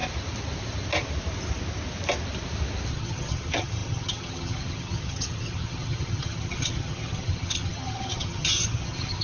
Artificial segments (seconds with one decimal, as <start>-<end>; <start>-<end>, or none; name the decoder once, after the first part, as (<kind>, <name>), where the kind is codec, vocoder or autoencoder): 2.9-9.2 (vocoder, HiFi-GAN)